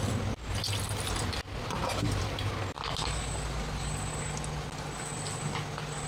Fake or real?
real